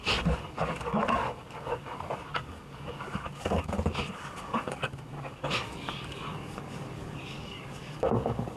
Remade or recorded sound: remade